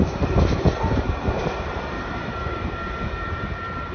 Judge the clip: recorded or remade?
remade